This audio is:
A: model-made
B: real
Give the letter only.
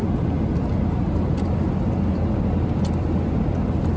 B